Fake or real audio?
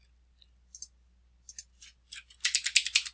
real